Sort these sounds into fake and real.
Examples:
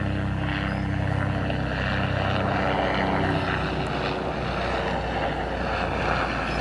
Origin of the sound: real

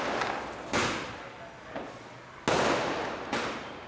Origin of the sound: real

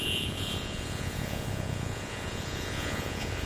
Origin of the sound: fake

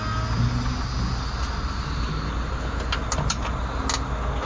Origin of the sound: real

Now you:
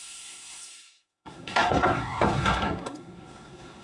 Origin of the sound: fake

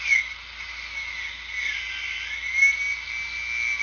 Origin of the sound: real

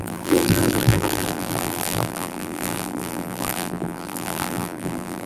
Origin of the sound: fake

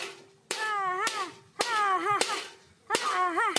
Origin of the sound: real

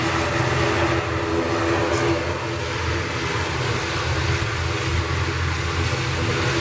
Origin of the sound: real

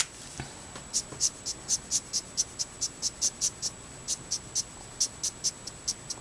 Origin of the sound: real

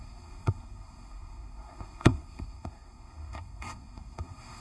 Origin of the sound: fake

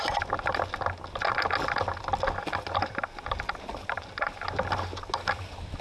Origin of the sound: real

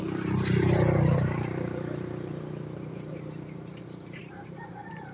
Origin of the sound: fake